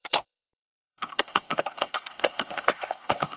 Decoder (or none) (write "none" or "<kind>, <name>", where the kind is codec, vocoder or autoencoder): codec, SNAC